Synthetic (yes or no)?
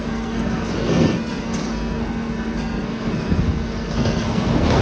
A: yes